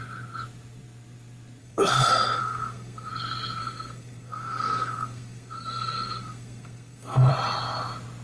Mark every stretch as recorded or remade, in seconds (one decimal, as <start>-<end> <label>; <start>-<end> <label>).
0.0-1.6 recorded; 1.6-3.1 remade; 3.1-3.6 recorded; 3.6-7.3 remade; 7.3-8.2 recorded